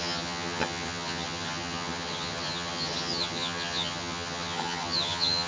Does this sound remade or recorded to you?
remade